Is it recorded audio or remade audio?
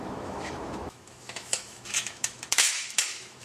remade